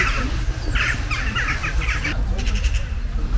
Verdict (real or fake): real